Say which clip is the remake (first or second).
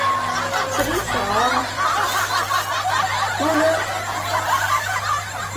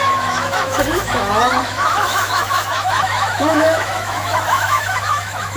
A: second